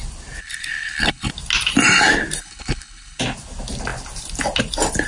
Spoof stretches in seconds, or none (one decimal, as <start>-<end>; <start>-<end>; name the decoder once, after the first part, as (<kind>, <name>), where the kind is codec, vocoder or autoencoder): 0.4-1.3 (codec, HILCodec); 2.4-3.2